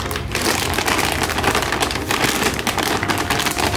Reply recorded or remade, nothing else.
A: recorded